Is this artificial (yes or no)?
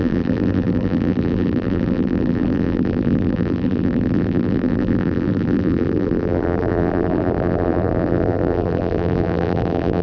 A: yes